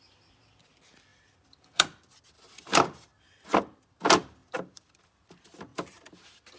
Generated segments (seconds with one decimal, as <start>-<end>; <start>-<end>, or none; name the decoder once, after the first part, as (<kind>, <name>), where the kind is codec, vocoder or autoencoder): 0.0-3.1 (vocoder, BigVGAN v2); 4.0-5.7